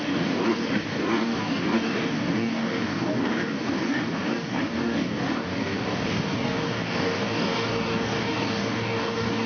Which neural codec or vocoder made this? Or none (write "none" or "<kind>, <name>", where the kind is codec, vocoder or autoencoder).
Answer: codec, DAC